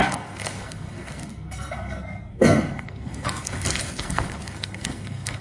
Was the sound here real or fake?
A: fake